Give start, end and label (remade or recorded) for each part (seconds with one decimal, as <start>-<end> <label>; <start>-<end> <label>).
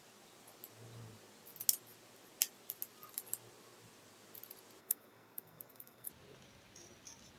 0.0-4.8 recorded; 4.8-6.1 remade; 6.1-7.4 recorded